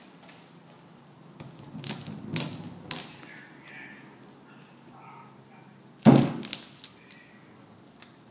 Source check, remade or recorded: recorded